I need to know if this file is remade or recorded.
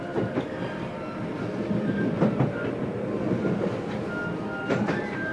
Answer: recorded